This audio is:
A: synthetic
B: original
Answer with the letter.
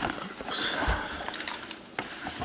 A